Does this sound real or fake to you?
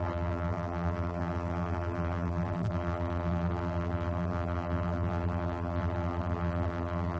fake